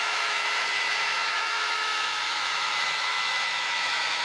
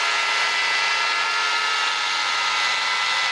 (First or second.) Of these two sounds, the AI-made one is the first